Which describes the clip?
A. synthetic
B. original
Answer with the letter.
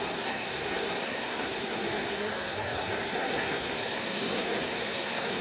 A